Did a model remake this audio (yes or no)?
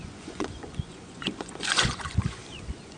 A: yes